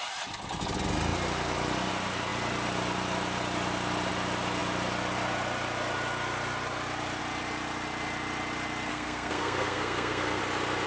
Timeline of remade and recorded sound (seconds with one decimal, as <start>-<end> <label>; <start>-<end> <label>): 0.0-8.9 recorded; 8.9-10.4 remade; 10.4-10.9 recorded